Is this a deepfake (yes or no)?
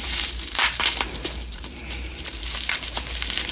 yes